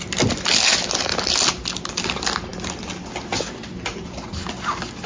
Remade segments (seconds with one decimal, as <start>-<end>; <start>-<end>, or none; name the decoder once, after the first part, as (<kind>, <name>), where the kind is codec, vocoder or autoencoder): none